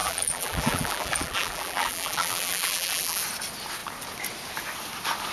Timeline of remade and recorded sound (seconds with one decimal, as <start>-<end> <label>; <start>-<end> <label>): 0.0-3.2 remade; 3.2-5.3 recorded